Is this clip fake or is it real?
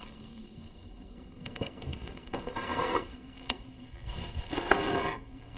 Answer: fake